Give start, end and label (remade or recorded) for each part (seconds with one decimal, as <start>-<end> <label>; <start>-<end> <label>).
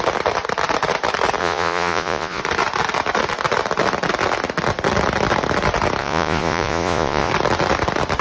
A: 0.0-1.4 recorded; 1.4-2.4 remade; 2.4-6.0 recorded; 6.0-7.3 remade; 7.3-8.2 recorded